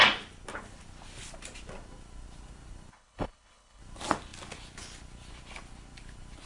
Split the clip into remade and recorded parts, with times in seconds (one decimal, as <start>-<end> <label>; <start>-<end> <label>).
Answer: 0.0-2.9 recorded; 2.9-3.8 remade; 3.8-6.5 recorded